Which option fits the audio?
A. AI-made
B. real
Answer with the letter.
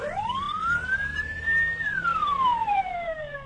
B